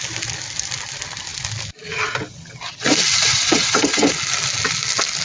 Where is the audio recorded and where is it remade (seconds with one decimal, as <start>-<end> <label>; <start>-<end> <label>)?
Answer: 0.0-3.3 recorded; 3.3-4.1 remade; 4.1-5.2 recorded